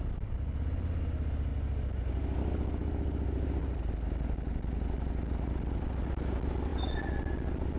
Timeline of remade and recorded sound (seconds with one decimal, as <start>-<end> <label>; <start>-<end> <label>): 0.0-7.8 recorded